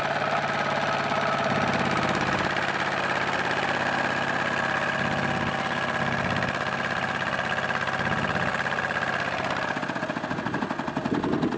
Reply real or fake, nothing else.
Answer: real